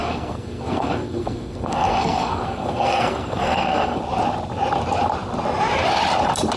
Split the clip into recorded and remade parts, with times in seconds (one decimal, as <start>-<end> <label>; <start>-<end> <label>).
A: 0.0-4.0 remade; 4.0-6.6 recorded